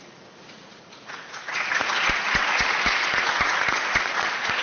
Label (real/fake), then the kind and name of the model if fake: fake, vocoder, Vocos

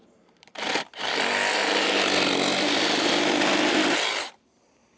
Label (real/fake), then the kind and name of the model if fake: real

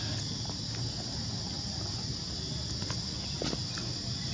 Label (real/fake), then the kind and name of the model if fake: real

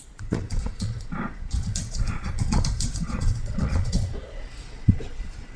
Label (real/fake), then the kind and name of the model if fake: fake, vocoder, Vocos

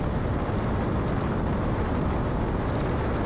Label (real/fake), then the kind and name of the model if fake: real